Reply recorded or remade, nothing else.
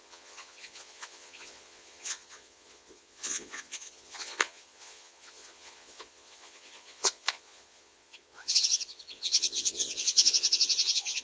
remade